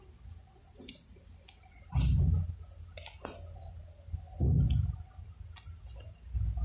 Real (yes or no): yes